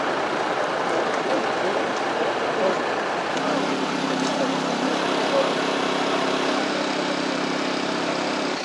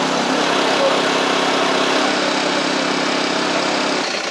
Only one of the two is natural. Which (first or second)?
second